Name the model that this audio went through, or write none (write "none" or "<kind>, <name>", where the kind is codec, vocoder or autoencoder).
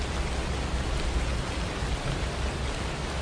none